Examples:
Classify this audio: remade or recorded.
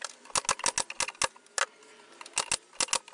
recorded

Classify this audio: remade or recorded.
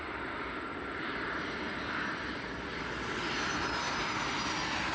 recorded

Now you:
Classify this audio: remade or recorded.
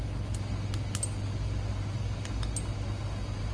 recorded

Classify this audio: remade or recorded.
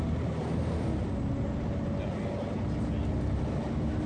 recorded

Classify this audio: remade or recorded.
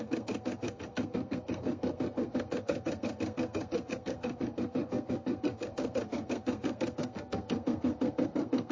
remade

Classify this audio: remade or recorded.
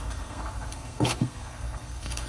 remade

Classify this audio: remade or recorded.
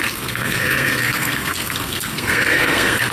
remade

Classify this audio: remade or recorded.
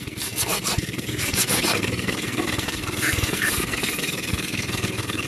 remade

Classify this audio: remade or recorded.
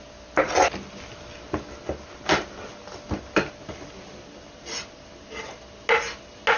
recorded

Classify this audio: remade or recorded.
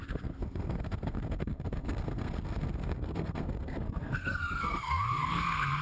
remade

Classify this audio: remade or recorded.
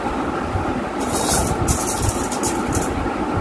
recorded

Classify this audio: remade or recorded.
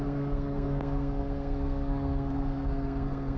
remade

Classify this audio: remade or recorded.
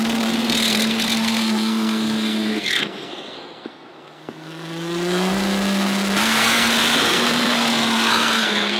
remade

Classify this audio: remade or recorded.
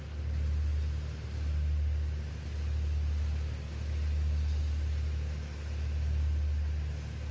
recorded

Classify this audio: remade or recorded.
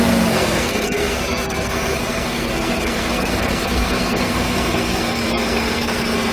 remade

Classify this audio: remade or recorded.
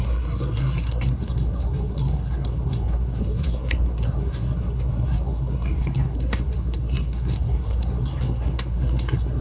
remade